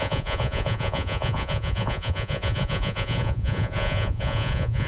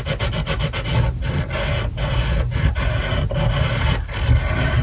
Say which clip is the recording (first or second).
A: second